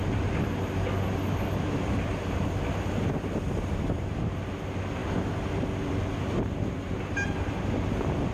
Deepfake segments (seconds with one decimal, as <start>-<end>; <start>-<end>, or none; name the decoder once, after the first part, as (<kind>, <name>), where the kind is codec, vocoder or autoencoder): none